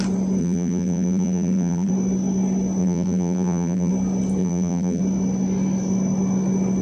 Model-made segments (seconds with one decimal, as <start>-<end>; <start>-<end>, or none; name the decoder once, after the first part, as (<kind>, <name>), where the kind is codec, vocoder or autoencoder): 0.4-1.9 (vocoder, BigVGAN v2); 2.8-3.9; 4.4-5.0